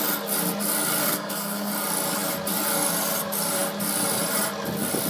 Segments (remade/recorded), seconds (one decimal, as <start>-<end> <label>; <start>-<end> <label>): 0.0-1.0 recorded; 1.0-1.7 remade; 1.7-5.1 recorded